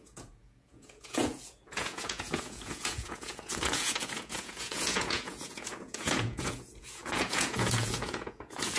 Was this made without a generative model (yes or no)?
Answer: no